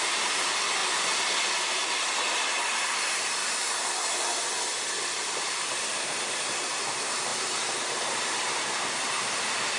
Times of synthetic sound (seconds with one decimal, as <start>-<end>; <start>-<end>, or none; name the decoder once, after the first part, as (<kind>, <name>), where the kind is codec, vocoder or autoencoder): 0.0-0.8 (vocoder, BigVGAN v2); 2.9-3.4; 5.4-9.8